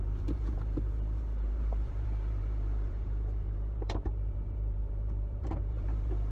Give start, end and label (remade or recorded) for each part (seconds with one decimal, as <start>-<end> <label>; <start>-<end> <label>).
0.0-6.3 remade